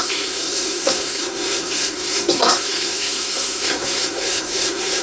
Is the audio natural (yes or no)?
no